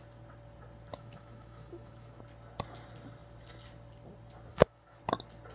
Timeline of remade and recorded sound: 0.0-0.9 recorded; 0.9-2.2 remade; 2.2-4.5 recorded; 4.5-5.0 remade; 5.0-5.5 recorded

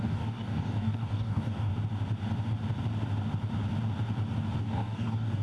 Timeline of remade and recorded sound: 0.0-1.7 remade; 1.7-4.6 recorded; 4.6-5.4 remade

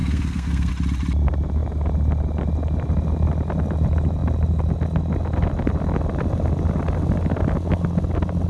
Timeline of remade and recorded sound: 0.0-0.7 remade; 0.7-8.5 recorded

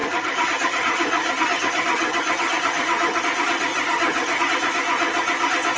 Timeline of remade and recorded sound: 0.0-3.2 remade; 3.2-3.7 recorded; 3.7-4.4 remade; 4.4-5.8 recorded

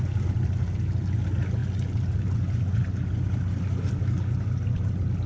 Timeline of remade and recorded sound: 0.0-5.3 recorded

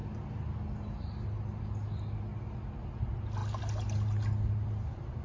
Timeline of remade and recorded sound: 0.0-5.2 recorded

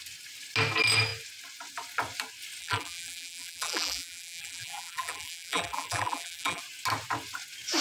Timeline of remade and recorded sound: 0.0-2.6 recorded; 2.6-6.6 remade; 6.6-7.8 recorded